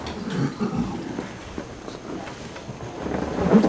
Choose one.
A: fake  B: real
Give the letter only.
B